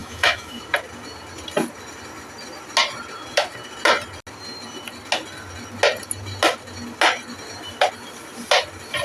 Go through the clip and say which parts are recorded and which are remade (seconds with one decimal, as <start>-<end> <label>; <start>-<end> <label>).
0.0-0.6 remade; 0.6-9.0 recorded